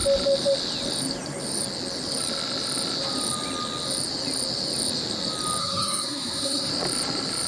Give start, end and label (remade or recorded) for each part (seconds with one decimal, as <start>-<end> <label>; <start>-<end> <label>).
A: 0.0-5.6 recorded; 5.6-6.7 remade; 6.7-7.5 recorded